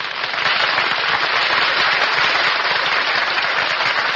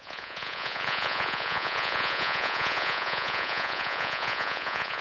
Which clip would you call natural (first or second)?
first